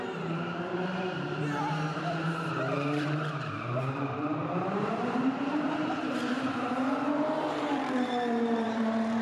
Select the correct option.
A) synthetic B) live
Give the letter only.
A